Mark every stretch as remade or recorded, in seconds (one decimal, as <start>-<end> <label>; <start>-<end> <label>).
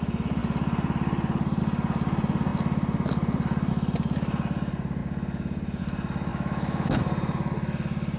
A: 0.0-6.3 recorded; 6.3-7.0 remade; 7.0-8.2 recorded